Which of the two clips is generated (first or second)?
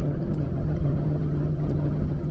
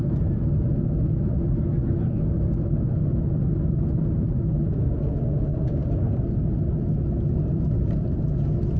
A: first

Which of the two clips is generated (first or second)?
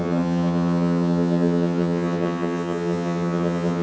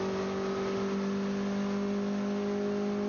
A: first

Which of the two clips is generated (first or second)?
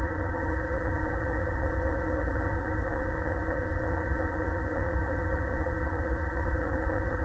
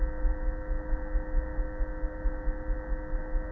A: first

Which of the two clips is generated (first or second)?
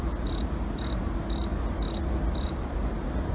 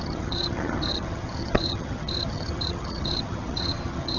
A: second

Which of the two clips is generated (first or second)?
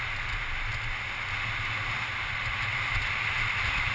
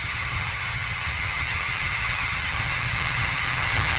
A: second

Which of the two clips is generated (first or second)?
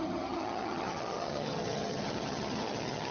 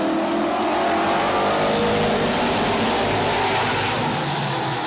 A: first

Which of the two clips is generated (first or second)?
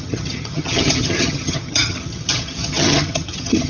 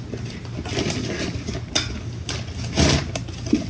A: first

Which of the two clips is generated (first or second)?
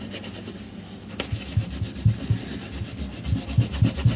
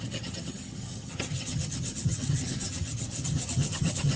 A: second